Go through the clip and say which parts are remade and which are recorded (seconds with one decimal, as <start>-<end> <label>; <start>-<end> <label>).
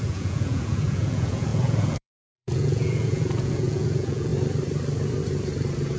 0.0-4.3 remade; 4.3-6.0 recorded